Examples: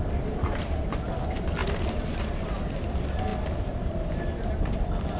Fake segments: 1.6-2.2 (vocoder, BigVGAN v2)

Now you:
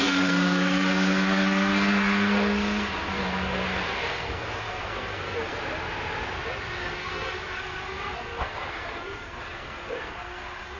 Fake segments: 0.0-5.6 (codec, SNAC); 6.8-10.8

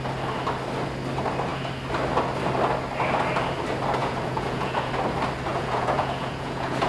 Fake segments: 4.0-4.9 (vocoder, Vocos); 5.5-6.9

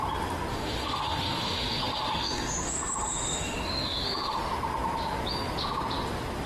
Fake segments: 0.5-4.4 (autoencoder, DAC-VAE)

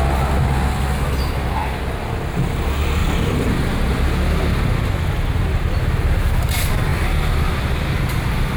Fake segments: 1.6-2.3 (vocoder, BigVGAN v2)

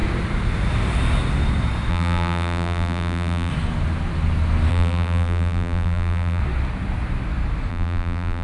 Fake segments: 1.9-3.5 (vocoder, BigVGAN v2); 4.7-6.4; 7.7-8.4

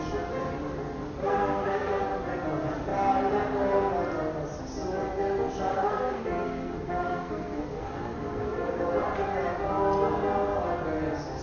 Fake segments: 1.2-2.0 (codec, SNAC); 5.7-8.8

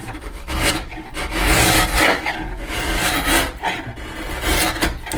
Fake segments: 0.0-3.1 (codec, DAC)